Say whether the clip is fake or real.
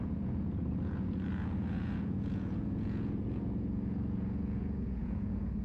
fake